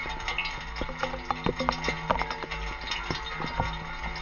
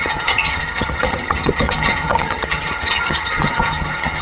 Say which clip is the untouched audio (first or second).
first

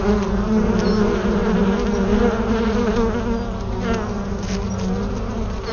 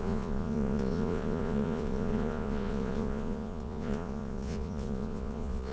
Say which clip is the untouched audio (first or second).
first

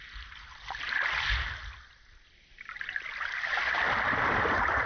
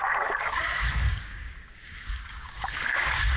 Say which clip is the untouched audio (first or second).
first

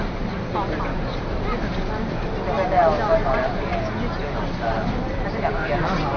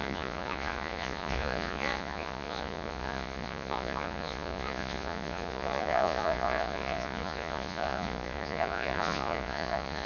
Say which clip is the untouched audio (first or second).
first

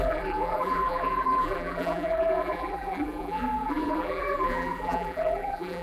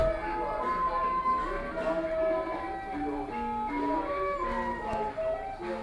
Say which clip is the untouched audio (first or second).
second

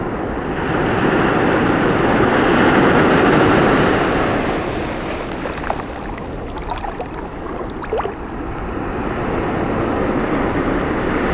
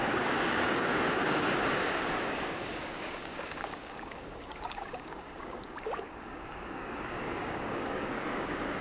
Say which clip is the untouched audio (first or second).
first